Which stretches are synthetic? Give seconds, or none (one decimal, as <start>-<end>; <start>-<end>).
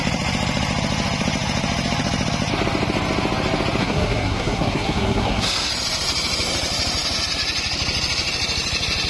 3.8-5.7